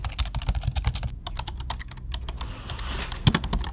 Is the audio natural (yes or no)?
yes